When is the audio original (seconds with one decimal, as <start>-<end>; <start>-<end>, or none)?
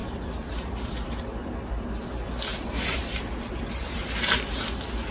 1.1-2.5; 4.6-5.1